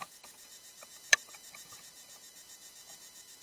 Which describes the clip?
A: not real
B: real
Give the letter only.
A